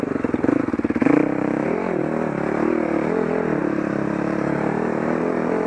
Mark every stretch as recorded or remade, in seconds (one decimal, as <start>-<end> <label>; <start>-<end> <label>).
0.0-1.0 recorded; 1.0-2.0 remade; 2.0-3.6 recorded; 3.6-5.7 remade